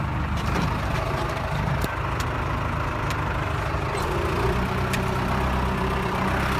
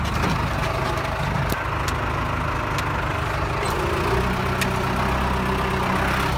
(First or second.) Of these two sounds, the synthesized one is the first